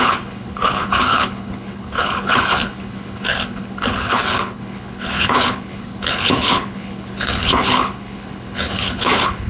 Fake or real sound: fake